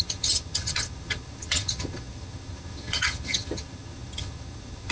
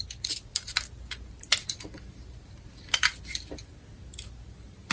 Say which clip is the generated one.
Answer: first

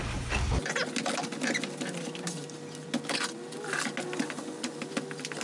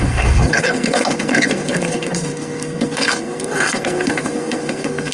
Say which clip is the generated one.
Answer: second